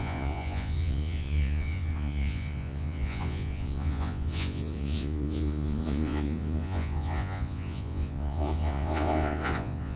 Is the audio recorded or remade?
remade